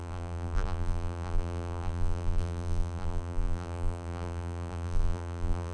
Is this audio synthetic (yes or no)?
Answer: yes